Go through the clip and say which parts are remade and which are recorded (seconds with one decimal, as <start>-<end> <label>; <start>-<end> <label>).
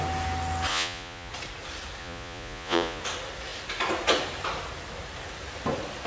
0.0-0.7 recorded; 0.7-1.3 remade; 1.3-2.0 recorded; 2.0-3.0 remade; 3.0-6.1 recorded